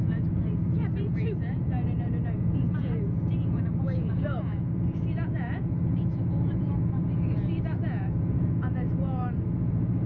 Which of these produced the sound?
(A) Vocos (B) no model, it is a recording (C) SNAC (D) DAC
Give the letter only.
A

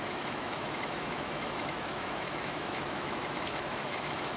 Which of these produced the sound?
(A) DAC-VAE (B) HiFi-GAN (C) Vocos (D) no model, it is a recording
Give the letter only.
A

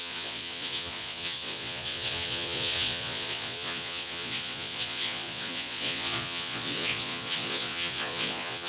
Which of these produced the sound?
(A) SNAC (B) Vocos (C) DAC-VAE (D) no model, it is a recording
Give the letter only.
B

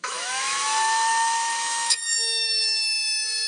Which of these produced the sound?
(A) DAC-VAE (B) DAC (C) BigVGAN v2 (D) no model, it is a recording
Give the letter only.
A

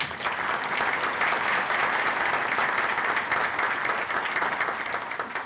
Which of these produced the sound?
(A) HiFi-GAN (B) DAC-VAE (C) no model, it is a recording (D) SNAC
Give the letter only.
C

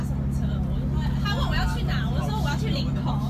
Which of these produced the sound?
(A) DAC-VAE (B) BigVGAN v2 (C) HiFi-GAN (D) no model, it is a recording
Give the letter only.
D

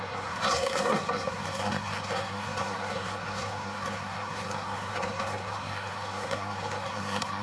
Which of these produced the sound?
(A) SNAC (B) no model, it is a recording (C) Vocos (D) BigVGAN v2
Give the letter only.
A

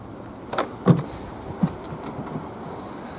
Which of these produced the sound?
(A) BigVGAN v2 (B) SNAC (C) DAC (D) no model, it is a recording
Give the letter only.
D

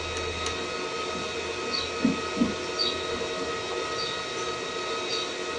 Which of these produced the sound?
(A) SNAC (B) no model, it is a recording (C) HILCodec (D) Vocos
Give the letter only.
B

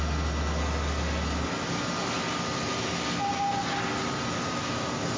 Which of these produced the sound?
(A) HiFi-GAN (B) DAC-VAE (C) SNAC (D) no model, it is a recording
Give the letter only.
D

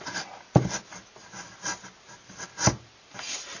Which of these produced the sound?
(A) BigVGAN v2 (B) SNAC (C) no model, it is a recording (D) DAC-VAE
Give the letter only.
C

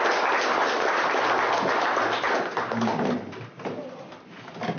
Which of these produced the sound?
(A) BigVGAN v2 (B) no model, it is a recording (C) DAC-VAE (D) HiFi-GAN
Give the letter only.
B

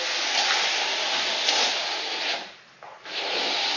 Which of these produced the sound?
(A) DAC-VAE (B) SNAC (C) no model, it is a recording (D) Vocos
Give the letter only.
C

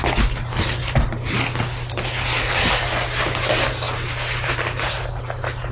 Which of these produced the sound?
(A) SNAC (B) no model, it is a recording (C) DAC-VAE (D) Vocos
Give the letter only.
B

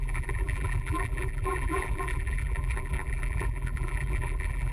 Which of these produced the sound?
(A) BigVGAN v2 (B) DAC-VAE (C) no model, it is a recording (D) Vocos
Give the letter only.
A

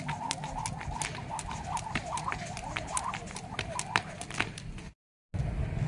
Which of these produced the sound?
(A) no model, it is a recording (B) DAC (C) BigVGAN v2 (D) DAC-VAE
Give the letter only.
A